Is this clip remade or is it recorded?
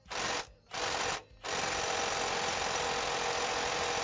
recorded